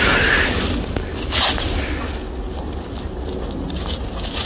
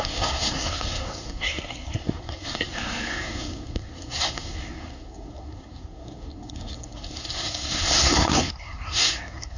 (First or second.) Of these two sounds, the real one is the first